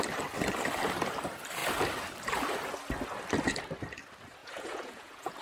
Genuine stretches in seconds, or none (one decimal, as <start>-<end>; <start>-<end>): 0.0-4.4